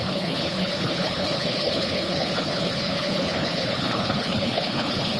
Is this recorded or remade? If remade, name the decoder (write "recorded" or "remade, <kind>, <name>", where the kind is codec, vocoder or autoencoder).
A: remade, codec, HILCodec